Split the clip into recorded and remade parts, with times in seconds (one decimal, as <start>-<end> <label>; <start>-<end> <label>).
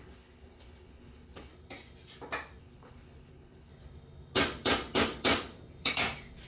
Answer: 0.0-1.5 remade; 1.5-2.6 recorded; 2.6-3.7 remade; 3.7-6.5 recorded